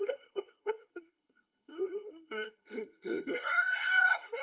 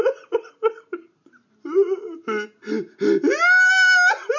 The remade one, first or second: first